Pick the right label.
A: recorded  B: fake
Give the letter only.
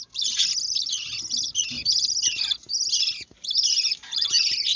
A